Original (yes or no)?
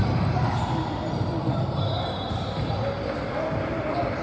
yes